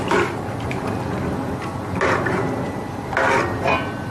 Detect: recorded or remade recorded